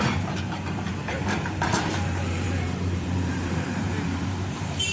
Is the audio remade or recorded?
remade